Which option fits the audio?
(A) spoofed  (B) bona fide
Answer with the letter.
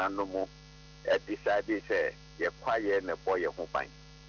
B